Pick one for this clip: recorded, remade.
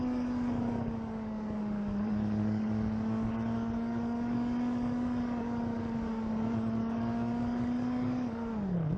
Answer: remade